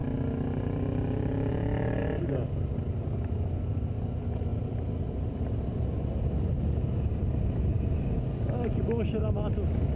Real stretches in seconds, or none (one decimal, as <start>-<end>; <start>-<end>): 0.0-10.0